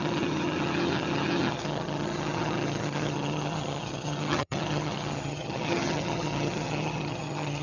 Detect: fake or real fake